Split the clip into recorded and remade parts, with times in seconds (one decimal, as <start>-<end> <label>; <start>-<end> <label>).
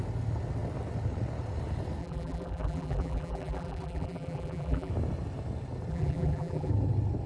0.0-2.0 recorded; 2.0-4.9 remade; 4.9-5.9 recorded; 5.9-6.7 remade; 6.7-7.3 recorded